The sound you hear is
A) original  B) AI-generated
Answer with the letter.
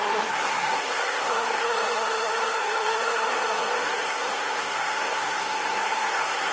B